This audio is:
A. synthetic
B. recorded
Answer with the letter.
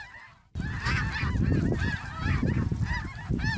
B